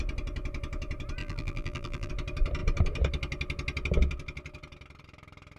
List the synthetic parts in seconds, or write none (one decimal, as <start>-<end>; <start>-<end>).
1.2-2.1